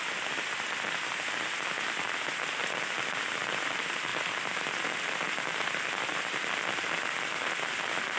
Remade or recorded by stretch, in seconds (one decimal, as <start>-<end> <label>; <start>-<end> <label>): 0.0-8.2 recorded

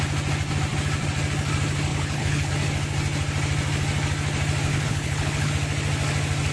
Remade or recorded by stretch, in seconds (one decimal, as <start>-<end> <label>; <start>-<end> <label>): 0.0-1.9 recorded; 1.9-2.5 remade; 2.5-4.7 recorded; 4.7-5.5 remade; 5.5-6.5 recorded

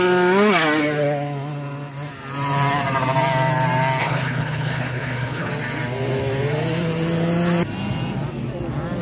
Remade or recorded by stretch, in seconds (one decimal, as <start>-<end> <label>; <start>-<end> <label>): 0.0-4.0 recorded; 4.0-5.5 remade; 5.5-9.0 recorded

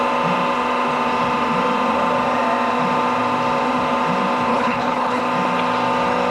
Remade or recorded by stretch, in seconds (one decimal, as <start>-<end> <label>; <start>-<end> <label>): 0.0-4.5 recorded; 4.5-5.2 remade; 5.2-6.3 recorded

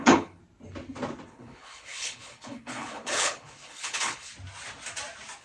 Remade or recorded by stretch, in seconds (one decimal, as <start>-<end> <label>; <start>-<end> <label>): 0.0-0.4 remade; 0.4-1.3 recorded; 1.3-4.3 remade; 4.3-5.4 recorded

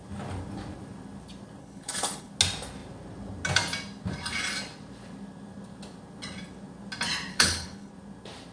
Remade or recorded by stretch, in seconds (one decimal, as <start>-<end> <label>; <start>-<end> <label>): 0.0-1.6 recorded; 1.6-2.3 remade; 2.3-7.3 recorded; 7.3-7.9 remade; 7.9-8.5 recorded